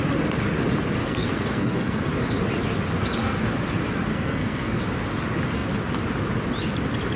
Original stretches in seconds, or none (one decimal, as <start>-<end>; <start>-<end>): 0.0-1.0; 2.1-4.1; 4.8-7.2